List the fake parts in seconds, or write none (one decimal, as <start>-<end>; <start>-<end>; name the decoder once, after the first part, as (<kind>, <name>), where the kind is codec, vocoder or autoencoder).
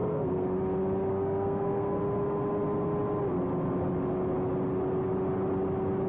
0.0-0.6 (codec, SNAC); 1.1-2.0